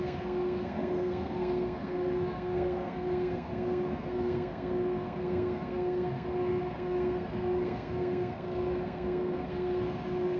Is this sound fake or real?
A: fake